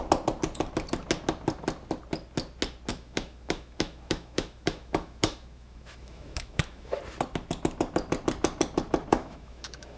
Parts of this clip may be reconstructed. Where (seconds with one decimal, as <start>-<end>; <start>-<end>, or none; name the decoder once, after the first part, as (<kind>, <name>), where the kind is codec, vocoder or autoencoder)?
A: 2.9-7.0 (autoencoder, DAC-VAE); 9.1-10.0